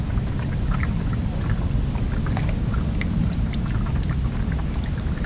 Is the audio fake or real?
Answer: real